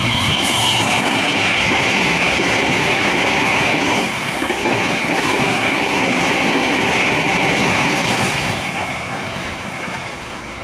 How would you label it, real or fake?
fake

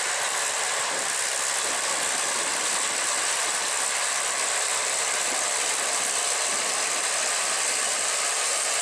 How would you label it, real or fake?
real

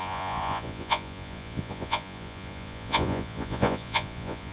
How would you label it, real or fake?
fake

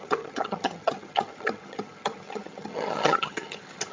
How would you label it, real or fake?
fake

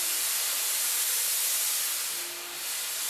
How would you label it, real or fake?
real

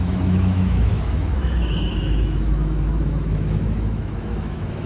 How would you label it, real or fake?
fake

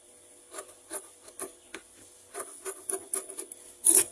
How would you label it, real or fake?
real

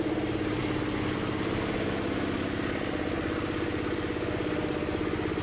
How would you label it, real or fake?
real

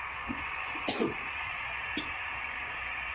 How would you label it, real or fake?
fake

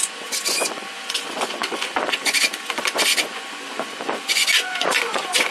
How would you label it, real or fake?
fake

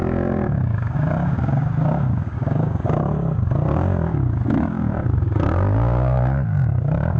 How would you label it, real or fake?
fake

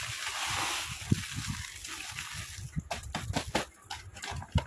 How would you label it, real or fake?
real